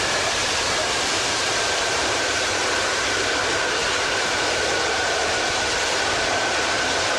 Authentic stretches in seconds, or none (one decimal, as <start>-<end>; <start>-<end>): 0.0-0.4; 2.5-7.2